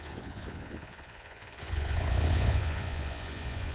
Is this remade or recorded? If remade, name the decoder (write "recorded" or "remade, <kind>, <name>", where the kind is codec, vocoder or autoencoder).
remade, vocoder, Vocos